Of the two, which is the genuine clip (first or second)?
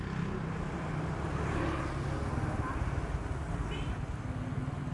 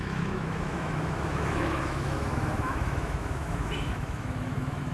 first